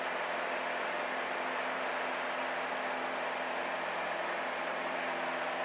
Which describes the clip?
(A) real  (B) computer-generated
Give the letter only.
A